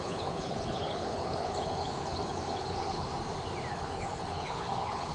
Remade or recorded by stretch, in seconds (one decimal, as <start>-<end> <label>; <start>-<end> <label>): 0.0-3.1 remade; 3.1-3.7 recorded; 3.7-5.1 remade